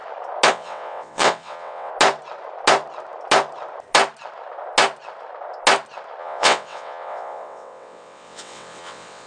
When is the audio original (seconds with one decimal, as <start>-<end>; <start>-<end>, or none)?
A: 0.0-0.5; 1.9-6.2